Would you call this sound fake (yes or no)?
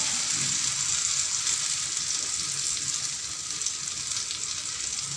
no